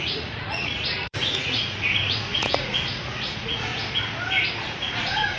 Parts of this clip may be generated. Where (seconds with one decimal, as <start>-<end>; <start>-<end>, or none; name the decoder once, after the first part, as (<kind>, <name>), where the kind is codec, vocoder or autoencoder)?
0.0-3.7 (vocoder, Vocos); 4.6-5.4